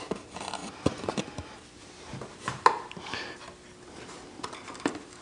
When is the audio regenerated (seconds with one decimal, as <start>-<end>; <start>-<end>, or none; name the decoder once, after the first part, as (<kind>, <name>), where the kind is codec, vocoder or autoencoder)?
0.6-3.7 (vocoder, BigVGAN v2)